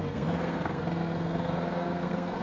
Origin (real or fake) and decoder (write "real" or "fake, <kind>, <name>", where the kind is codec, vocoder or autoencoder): fake, codec, SNAC